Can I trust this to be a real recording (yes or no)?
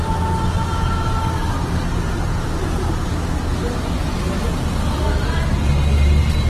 yes